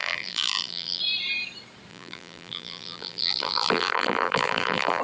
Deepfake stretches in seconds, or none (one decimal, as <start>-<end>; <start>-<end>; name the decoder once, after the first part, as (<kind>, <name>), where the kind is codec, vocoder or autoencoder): 0.0-1.0 (vocoder, BigVGAN v2); 1.9-5.0

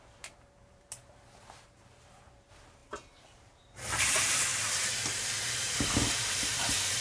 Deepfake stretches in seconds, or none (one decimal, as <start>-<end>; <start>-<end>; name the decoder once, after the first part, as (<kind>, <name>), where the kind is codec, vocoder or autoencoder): 0.0-7.0 (vocoder, BigVGAN v2)

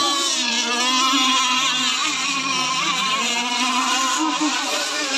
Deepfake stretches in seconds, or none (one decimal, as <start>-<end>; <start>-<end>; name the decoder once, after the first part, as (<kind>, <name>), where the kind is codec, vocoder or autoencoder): 0.0-0.5 (vocoder, BigVGAN v2); 2.0-5.2

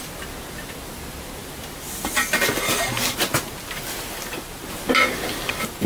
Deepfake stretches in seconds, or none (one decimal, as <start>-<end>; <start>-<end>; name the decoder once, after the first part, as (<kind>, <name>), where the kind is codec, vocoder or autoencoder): 1.4-2.9 (vocoder, BigVGAN v2)

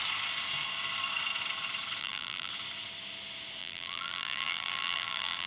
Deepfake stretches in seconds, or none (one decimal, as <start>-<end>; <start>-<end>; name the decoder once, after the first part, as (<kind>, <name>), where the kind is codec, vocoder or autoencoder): 2.0-2.5 (vocoder, BigVGAN v2); 3.6-5.5

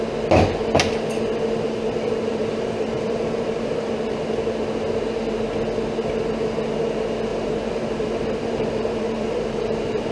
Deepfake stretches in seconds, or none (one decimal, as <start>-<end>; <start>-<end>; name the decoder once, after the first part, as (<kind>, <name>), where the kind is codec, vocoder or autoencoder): 2.3-3.9 (vocoder, BigVGAN v2); 7.3-10.1

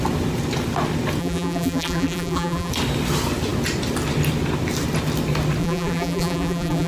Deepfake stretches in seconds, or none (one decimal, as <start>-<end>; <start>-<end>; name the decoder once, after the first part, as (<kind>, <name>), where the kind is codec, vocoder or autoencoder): 1.2-2.7 (vocoder, BigVGAN v2); 5.6-6.9

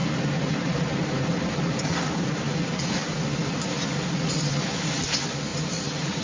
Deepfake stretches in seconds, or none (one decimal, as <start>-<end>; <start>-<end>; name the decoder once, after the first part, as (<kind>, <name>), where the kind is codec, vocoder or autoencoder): 0.0-2.3 (vocoder, BigVGAN v2); 5.5-6.2